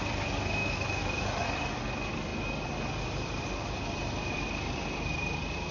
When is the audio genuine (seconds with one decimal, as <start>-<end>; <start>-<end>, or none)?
0.0-0.6; 1.3-5.7

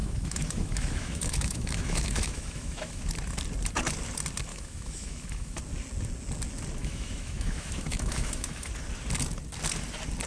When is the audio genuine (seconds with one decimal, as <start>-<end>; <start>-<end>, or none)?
3.1-4.5; 5.6-6.8; 8.7-10.3

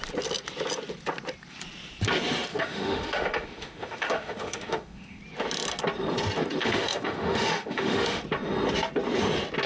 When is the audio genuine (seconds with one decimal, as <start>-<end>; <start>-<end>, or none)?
0.0-2.5; 5.2-6.6; 8.2-9.7